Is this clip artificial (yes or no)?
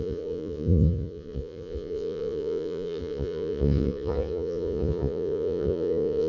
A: yes